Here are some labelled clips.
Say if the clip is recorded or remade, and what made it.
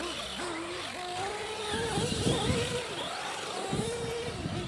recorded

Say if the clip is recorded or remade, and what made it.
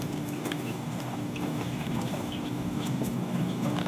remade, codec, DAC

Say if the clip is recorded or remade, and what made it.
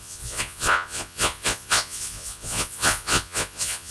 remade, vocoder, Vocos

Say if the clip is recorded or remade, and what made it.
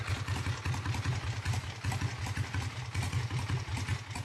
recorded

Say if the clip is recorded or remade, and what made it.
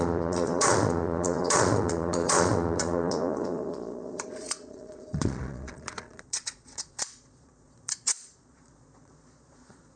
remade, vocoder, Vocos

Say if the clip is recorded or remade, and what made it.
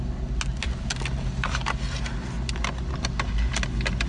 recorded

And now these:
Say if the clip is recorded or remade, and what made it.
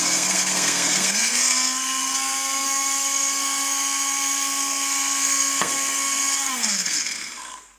remade, codec, SNAC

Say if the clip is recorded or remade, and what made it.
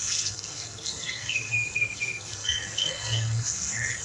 remade, codec, SNAC